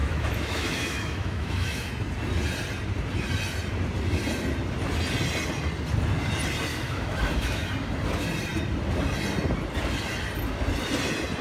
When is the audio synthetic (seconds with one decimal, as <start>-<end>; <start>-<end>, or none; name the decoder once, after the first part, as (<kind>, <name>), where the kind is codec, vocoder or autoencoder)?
0.0-1.9 (autoencoder, DAC-VAE); 6.7-7.7